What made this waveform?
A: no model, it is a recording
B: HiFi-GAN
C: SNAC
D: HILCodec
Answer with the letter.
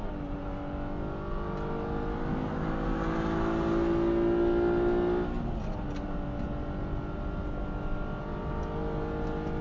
A